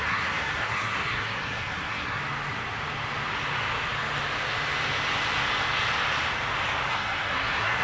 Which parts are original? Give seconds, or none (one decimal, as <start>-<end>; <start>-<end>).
2.2-6.9